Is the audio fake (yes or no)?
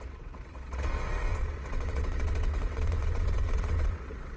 yes